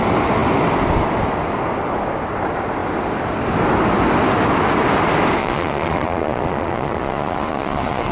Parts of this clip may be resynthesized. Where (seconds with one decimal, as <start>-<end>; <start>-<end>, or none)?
5.4-8.1